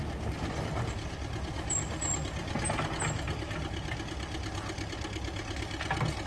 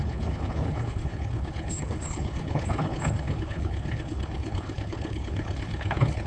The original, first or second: first